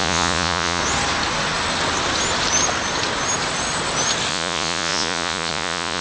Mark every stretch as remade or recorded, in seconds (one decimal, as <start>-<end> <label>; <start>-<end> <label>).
0.0-0.8 remade; 0.8-4.3 recorded; 4.3-6.0 remade